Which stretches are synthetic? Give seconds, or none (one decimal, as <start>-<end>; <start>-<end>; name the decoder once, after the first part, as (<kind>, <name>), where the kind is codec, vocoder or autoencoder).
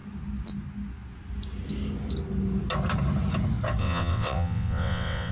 3.8-5.3 (vocoder, WaveNeXt)